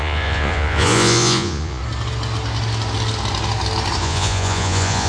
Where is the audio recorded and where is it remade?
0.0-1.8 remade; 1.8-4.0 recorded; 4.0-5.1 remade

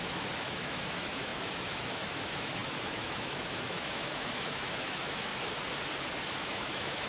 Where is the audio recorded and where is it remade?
0.0-5.3 remade; 5.3-6.2 recorded; 6.2-7.1 remade

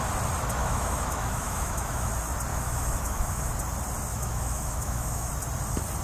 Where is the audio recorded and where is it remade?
0.0-0.6 recorded; 0.6-2.1 remade; 2.1-2.5 recorded; 2.5-3.5 remade; 3.5-4.1 recorded; 4.1-5.3 remade; 5.3-6.0 recorded

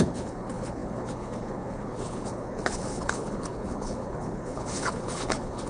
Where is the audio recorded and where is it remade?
0.0-5.7 remade

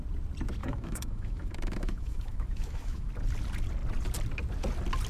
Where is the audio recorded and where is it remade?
0.0-0.6 recorded; 0.6-3.1 remade; 3.1-5.1 recorded

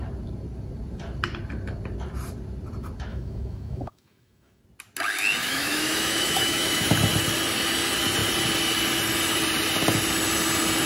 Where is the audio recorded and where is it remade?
0.0-3.1 recorded; 3.1-4.6 remade; 4.6-5.4 recorded; 5.4-6.9 remade; 6.9-10.9 recorded

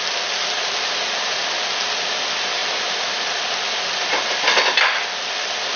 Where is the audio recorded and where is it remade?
0.0-5.8 recorded

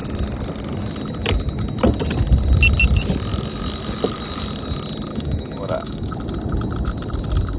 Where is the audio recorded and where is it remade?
0.0-5.1 recorded; 5.1-6.1 remade; 6.1-7.6 recorded